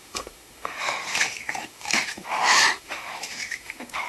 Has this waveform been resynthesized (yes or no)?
yes